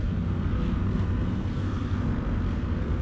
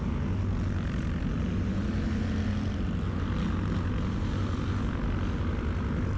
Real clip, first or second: second